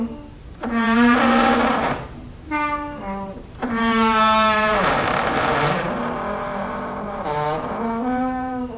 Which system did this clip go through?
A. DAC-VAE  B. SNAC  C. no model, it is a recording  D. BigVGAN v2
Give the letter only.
D